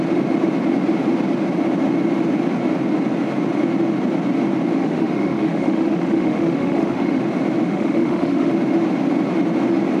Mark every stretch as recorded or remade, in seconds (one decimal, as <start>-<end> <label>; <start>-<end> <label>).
0.0-4.8 recorded; 4.8-7.2 remade; 7.2-7.7 recorded; 7.7-8.5 remade; 8.5-10.0 recorded